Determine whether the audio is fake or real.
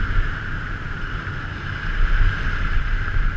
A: real